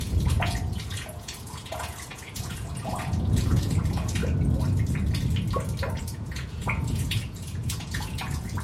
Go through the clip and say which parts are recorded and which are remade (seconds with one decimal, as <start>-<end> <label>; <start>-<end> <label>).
0.0-4.2 remade; 4.2-6.0 recorded; 6.0-8.6 remade